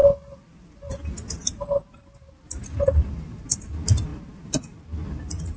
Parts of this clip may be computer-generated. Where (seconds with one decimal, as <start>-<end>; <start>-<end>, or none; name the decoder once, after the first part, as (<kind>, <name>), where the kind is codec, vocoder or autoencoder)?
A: 3.0-5.6 (vocoder, BigVGAN v2)